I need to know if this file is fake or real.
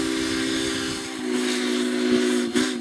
real